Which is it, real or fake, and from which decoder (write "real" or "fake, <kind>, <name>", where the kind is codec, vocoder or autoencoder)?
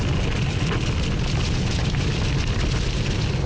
real